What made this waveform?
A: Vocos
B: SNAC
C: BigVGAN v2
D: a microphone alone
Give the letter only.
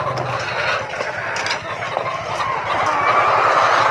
D